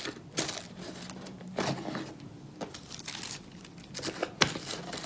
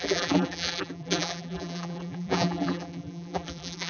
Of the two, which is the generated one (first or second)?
second